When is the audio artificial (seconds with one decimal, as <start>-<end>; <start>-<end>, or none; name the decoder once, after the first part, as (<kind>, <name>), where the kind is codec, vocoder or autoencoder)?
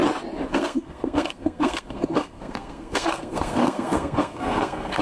0.5-5.0 (codec, SNAC)